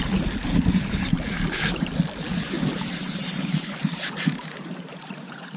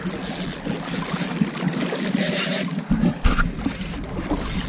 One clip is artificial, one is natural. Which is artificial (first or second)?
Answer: first